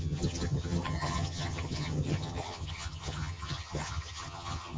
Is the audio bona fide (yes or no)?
no